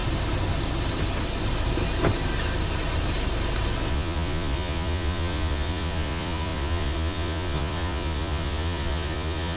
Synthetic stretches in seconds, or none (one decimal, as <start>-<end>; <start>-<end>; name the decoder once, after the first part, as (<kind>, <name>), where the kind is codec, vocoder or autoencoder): 3.9-9.6 (vocoder, Vocos)